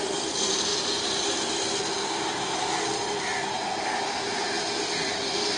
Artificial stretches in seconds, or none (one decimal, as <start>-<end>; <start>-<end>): none